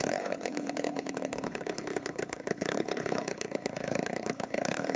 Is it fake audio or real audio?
fake